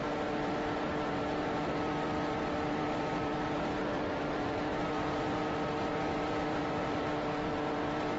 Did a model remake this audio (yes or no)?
yes